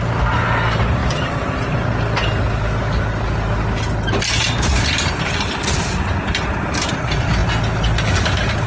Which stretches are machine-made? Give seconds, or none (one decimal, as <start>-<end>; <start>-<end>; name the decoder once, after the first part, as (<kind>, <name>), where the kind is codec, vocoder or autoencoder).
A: none